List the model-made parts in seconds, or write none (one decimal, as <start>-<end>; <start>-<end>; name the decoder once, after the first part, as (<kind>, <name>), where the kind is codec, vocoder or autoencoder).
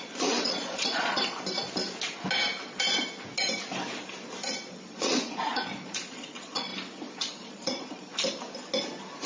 0.0-1.2 (vocoder, Vocos); 4.7-6.7; 7.2-8.1